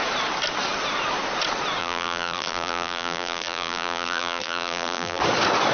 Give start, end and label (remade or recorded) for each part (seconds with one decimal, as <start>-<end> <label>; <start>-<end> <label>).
0.0-1.8 recorded; 1.8-5.2 remade; 5.2-5.7 recorded